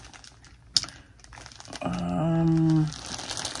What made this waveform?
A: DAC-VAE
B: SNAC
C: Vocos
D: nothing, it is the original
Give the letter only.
D